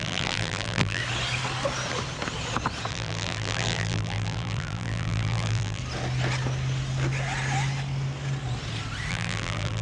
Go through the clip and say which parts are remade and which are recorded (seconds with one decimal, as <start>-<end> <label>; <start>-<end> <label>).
0.0-1.0 remade; 1.0-2.9 recorded; 2.9-5.8 remade; 5.8-9.1 recorded; 9.1-9.8 remade